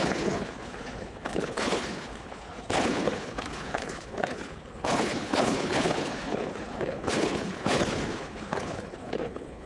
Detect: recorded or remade remade